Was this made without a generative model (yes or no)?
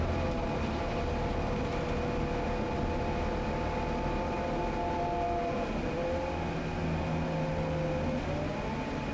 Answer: yes